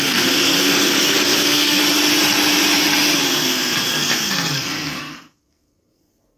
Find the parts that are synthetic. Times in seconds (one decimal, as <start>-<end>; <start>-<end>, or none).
0.0-1.8; 3.3-6.4